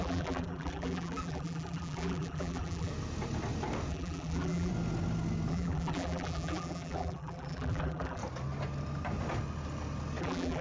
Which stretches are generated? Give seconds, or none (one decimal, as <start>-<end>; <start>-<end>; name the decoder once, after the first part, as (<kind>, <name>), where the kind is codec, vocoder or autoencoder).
0.0-2.9 (vocoder, BigVGAN v2); 3.9-4.7; 5.5-8.2; 10.2-10.6